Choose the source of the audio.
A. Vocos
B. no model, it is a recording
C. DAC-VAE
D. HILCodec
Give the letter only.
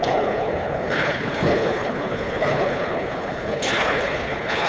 D